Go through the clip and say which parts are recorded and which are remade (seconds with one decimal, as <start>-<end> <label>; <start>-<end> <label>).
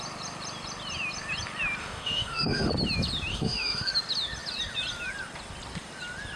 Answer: 0.0-1.8 recorded; 1.8-2.7 remade; 2.7-3.3 recorded; 3.3-3.9 remade; 3.9-6.4 recorded